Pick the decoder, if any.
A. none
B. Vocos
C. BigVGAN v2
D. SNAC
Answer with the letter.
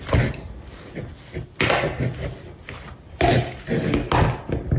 A